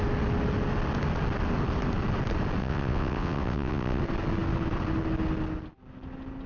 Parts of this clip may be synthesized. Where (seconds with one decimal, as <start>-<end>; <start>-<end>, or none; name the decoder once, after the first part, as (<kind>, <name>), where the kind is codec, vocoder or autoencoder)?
2.6-4.0 (vocoder, WaveNeXt)